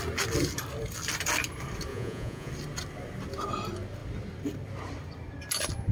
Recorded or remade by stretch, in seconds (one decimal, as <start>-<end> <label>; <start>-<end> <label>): 0.0-1.9 recorded; 1.9-2.5 remade; 2.5-5.9 recorded